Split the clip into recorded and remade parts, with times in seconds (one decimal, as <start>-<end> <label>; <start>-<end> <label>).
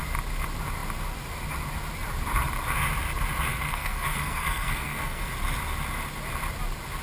0.0-3.5 recorded; 3.5-5.3 remade; 5.3-7.0 recorded